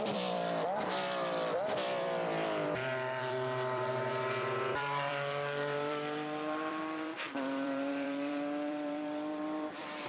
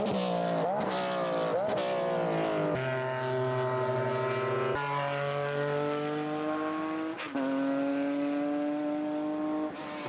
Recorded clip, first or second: second